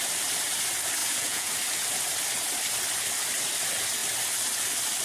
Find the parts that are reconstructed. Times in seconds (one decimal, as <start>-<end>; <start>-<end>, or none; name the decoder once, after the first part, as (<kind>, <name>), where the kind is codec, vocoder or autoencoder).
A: 1.0-1.5 (vocoder, Vocos)